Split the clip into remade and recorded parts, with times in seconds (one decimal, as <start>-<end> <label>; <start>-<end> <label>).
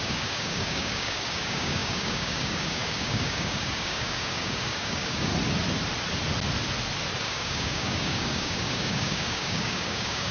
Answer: 0.0-5.3 remade; 5.3-7.2 recorded; 7.2-10.3 remade